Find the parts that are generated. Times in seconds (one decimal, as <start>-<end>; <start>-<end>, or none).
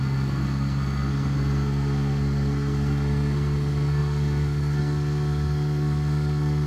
0.0-6.7